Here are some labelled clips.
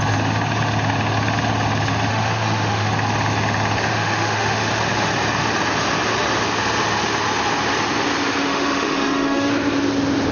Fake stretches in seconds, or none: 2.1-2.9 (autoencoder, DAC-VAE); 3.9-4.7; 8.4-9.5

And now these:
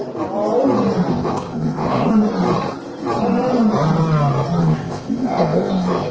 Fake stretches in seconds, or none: 1.1-2.1 (codec, ZipCodec); 4.6-6.1

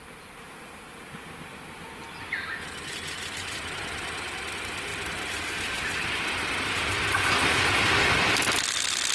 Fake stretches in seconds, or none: none

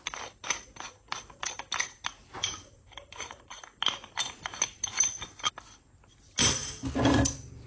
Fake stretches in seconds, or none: 2.3-3.4 (vocoder, BigVGAN v2)

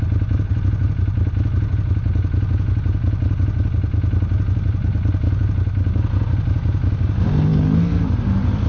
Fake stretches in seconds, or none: none

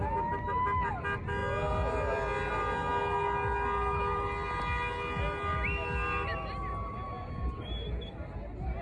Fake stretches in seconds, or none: none

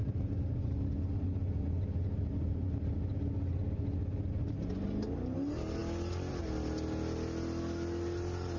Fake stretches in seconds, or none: none

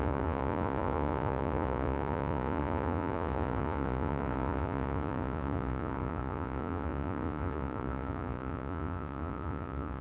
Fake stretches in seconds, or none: 0.0-10.0 (vocoder, Vocos)